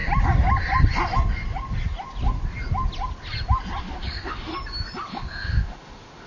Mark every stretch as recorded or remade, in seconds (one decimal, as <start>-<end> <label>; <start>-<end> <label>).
0.0-3.8 recorded; 3.8-4.5 remade; 4.5-5.1 recorded; 5.1-6.3 remade

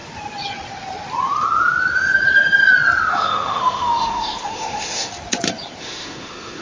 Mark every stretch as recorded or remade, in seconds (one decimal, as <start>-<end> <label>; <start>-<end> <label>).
0.0-3.1 recorded; 3.1-5.1 remade; 5.1-5.8 recorded; 5.8-6.6 remade

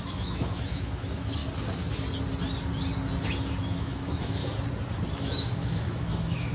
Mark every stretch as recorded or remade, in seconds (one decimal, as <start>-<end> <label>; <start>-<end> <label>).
0.0-1.4 remade; 1.4-3.6 recorded; 3.6-4.4 remade; 4.4-5.2 recorded; 5.2-6.5 remade

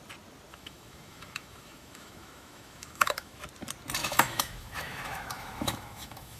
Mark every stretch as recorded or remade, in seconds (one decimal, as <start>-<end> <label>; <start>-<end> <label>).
0.0-0.5 recorded; 0.5-3.4 remade; 3.4-4.0 recorded; 4.0-6.4 remade

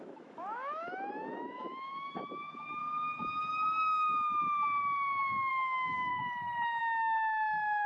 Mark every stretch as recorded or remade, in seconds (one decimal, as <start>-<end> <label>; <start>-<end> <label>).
0.0-2.8 remade; 2.8-5.5 recorded; 5.5-6.1 remade; 6.1-6.8 recorded; 6.8-7.9 remade

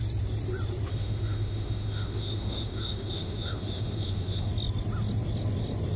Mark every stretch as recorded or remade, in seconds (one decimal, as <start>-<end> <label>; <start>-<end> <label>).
0.0-0.9 recorded; 0.9-4.5 remade; 4.5-6.0 recorded

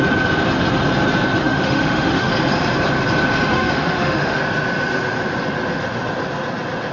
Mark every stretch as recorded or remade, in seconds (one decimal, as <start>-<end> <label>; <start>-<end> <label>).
0.0-1.4 recorded; 1.4-2.3 remade; 2.3-3.5 recorded; 3.5-4.4 remade; 4.4-6.9 recorded